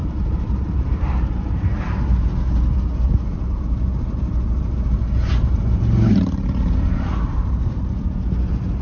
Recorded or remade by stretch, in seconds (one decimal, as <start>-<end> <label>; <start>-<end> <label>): 0.0-1.7 remade; 1.7-3.3 recorded; 3.3-7.8 remade; 7.8-8.8 recorded